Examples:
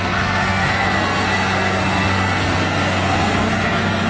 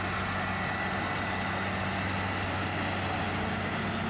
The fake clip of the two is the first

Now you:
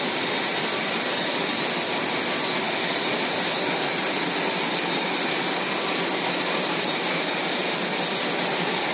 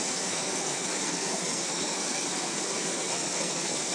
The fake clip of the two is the second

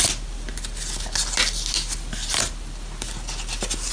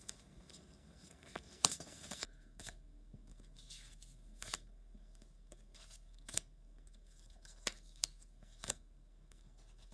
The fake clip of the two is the second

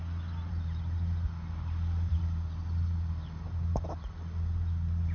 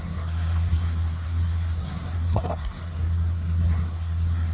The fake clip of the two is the second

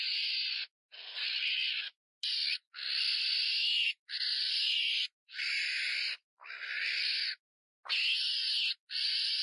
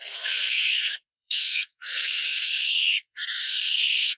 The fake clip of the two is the second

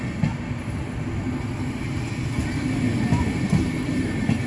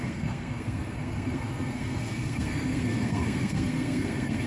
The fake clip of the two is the second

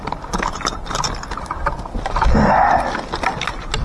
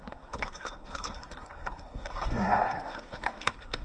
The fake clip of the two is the second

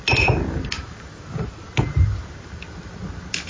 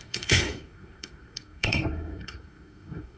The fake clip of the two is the second